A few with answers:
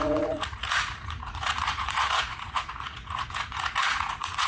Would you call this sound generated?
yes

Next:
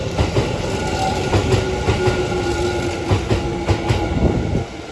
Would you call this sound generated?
no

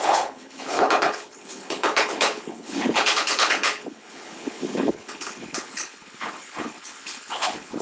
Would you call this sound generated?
yes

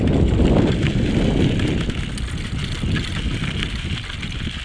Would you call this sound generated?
no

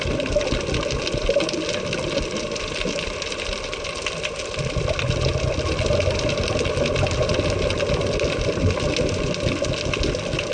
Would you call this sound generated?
no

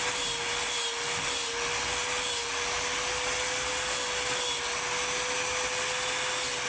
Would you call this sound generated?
no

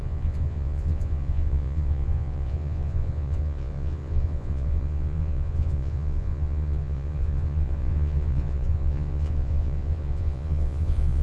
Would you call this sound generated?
yes